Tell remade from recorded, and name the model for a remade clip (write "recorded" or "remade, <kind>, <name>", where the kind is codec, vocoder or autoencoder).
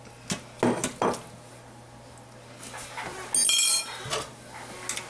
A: recorded